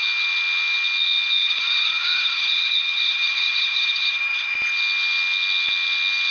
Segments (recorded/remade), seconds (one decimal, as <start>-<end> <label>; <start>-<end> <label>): 0.0-1.4 recorded; 1.4-4.5 remade; 4.5-6.3 recorded